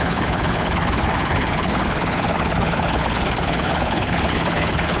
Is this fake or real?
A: fake